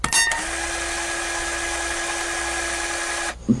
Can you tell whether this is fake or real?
real